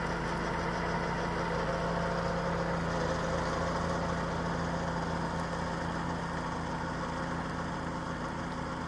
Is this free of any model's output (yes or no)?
yes